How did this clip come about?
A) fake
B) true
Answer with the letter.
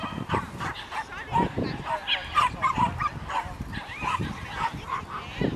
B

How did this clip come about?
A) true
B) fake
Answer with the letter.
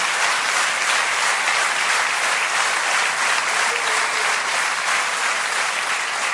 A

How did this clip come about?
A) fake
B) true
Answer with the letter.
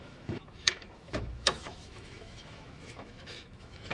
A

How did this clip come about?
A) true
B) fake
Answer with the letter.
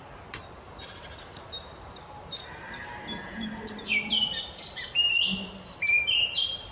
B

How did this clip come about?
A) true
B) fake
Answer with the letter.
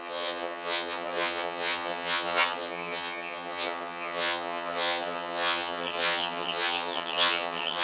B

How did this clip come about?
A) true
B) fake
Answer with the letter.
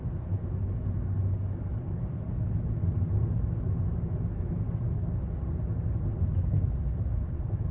A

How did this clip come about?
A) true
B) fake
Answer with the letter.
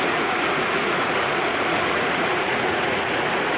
B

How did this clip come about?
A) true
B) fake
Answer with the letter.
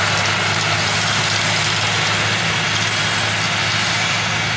A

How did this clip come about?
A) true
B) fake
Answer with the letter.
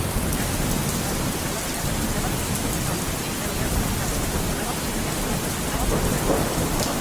A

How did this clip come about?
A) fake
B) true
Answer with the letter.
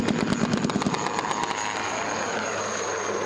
B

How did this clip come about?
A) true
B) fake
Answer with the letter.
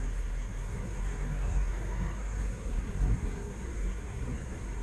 B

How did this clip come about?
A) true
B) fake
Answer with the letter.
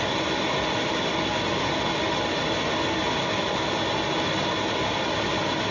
A